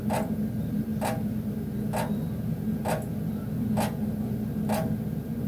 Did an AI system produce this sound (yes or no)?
no